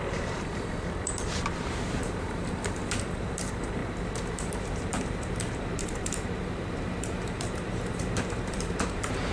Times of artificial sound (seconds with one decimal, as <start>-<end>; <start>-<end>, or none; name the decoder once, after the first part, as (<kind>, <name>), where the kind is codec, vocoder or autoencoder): 0.0-3.8 (vocoder, BigVGAN v2); 4.3-9.3